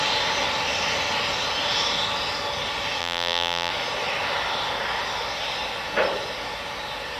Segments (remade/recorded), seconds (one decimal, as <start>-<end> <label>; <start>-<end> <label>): 0.0-3.0 recorded; 3.0-3.7 remade; 3.7-7.2 recorded